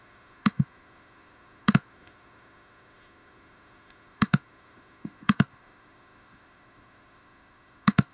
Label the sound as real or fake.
fake